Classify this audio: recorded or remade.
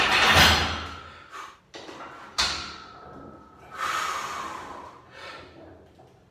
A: recorded